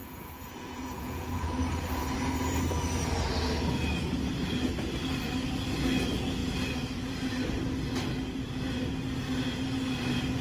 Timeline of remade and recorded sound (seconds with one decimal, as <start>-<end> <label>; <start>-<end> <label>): 0.0-1.6 remade; 1.6-10.4 recorded